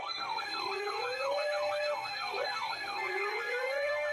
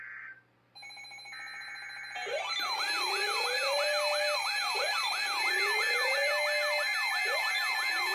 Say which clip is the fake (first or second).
first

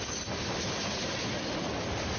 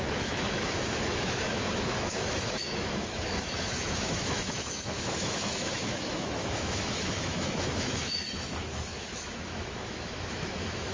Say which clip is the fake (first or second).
second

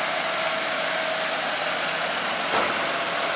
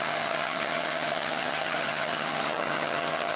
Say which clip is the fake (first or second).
second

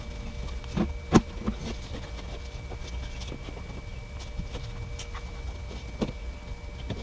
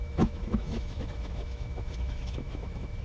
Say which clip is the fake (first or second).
second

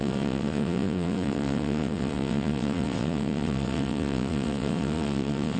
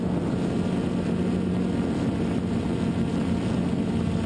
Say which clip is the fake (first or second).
first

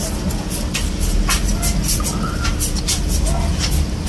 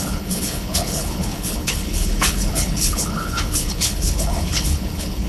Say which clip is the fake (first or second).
second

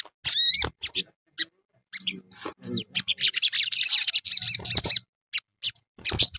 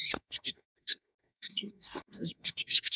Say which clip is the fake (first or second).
second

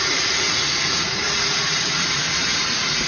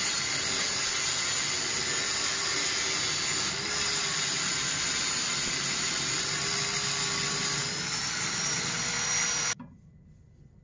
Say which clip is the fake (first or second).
first